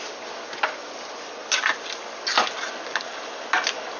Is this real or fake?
real